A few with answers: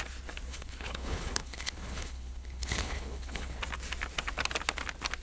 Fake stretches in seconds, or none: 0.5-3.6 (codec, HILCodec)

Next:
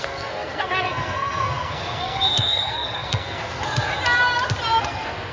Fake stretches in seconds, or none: 0.0-3.9 (codec, SNAC); 4.8-5.3

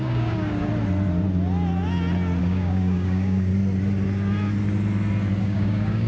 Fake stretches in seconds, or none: 0.0-0.7 (codec, DAC); 2.4-3.5; 5.4-6.1